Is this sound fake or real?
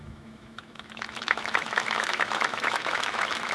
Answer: fake